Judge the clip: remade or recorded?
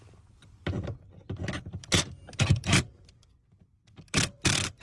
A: remade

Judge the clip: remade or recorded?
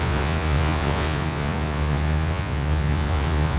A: remade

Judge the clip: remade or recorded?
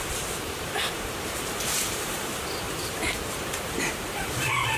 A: remade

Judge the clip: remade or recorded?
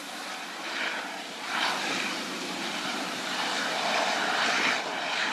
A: remade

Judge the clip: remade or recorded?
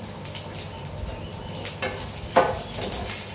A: recorded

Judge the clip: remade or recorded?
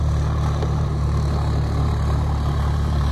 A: remade